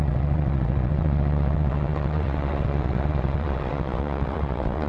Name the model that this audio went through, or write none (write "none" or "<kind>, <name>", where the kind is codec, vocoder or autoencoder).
vocoder, WaveNeXt